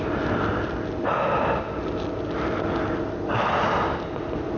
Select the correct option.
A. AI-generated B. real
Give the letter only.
B